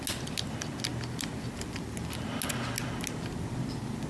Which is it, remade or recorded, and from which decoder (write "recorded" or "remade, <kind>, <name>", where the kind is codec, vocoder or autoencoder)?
recorded